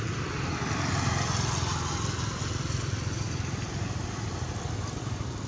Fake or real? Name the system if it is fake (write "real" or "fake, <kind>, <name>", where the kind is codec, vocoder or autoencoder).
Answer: real